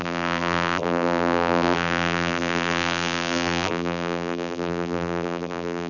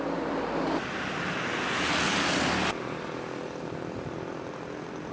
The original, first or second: second